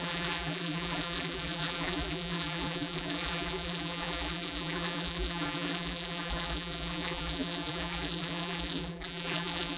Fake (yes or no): yes